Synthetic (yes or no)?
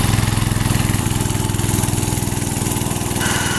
no